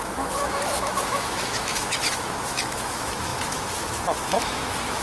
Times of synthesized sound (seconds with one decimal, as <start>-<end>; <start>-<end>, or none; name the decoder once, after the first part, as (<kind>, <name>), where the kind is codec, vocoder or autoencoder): 0.0-5.0 (autoencoder, DAC-VAE)